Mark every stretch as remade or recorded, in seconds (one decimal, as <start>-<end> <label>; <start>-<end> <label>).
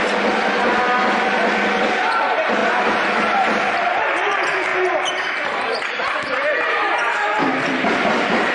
0.0-8.5 recorded